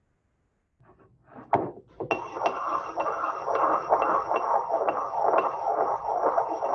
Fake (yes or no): no